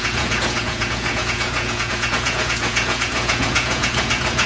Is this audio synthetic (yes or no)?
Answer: yes